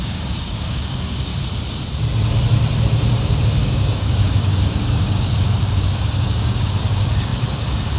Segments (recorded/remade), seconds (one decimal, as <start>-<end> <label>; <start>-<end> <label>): 0.0-1.3 remade; 1.3-3.4 recorded; 3.4-8.0 remade